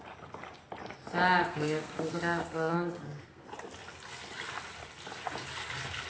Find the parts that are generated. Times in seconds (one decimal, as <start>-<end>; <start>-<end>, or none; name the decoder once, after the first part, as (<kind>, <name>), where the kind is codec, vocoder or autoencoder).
1.4-3.4 (codec, SNAC)

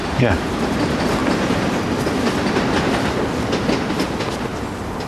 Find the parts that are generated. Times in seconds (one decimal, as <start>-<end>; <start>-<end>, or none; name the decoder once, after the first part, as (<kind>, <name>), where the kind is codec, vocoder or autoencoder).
none

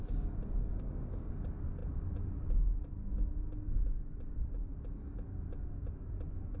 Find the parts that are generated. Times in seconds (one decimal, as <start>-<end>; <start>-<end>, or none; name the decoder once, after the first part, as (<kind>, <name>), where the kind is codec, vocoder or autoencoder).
0.6-1.3 (codec, SNAC)

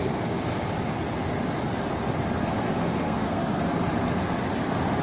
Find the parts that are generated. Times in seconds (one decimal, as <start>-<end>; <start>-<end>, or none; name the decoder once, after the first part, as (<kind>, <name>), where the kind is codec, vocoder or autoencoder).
2.4-3.6 (codec, SNAC)